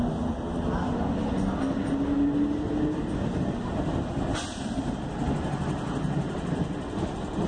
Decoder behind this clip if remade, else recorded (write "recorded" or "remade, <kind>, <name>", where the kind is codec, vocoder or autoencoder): recorded